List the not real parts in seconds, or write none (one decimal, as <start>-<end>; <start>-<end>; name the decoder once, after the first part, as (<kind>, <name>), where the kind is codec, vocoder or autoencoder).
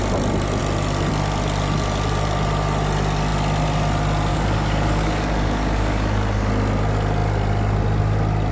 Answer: 4.3-6.5 (codec, DAC)